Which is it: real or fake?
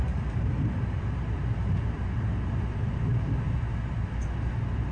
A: real